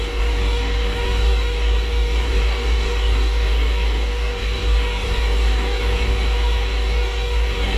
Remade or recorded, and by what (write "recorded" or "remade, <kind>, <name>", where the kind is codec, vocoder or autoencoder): remade, codec, DAC